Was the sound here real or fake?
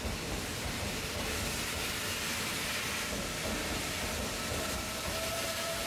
fake